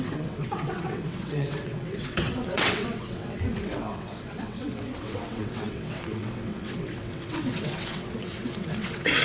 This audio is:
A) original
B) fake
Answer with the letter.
B